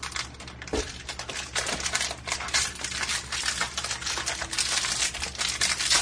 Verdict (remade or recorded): recorded